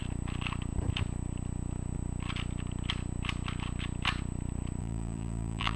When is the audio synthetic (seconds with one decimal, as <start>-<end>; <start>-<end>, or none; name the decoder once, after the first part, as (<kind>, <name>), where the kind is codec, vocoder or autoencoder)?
4.8-5.8 (vocoder, BigVGAN v2)